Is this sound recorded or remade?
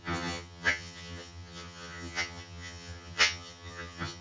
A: remade